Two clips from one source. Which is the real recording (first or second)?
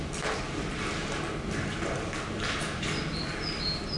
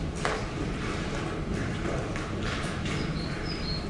first